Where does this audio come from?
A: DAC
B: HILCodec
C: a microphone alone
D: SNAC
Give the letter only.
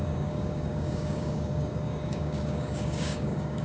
A